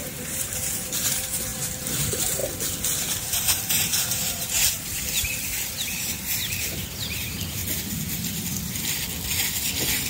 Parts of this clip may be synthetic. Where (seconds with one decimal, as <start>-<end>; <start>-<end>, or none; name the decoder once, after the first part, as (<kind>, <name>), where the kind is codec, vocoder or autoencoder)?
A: 0.0-2.4 (vocoder, BigVGAN v2); 3.2-7.6